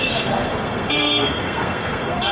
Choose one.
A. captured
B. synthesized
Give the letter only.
B